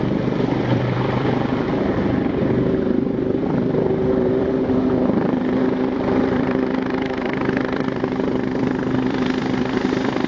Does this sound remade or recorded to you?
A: remade